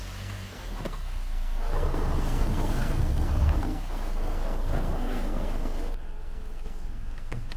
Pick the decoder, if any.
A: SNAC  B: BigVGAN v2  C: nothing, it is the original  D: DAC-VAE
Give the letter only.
A